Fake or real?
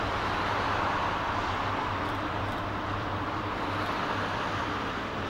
fake